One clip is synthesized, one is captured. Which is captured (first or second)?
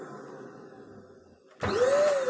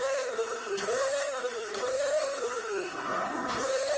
first